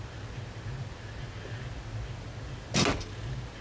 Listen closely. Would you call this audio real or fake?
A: real